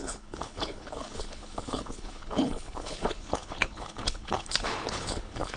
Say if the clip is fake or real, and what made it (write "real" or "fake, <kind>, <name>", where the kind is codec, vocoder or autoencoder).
fake, codec, HILCodec